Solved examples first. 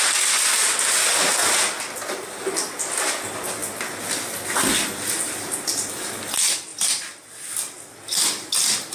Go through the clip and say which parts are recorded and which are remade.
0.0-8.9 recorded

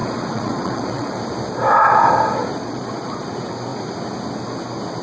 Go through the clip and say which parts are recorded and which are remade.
0.0-1.2 remade; 1.2-2.4 recorded; 2.4-3.2 remade; 3.2-5.0 recorded

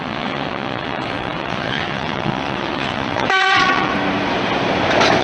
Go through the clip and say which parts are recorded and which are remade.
0.0-3.9 remade; 3.9-5.2 recorded

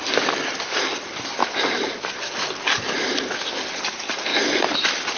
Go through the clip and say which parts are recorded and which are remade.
0.0-1.4 recorded; 1.4-2.2 remade; 2.2-5.2 recorded

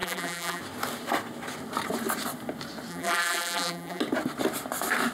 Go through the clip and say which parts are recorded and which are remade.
0.0-0.6 remade; 0.6-2.9 recorded; 2.9-4.0 remade; 4.0-5.1 recorded

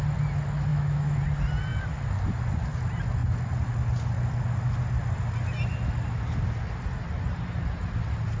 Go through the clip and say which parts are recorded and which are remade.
0.0-0.7 recorded; 0.7-1.2 remade; 1.2-8.4 recorded

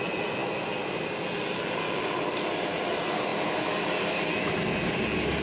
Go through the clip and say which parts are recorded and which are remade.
0.0-5.4 recorded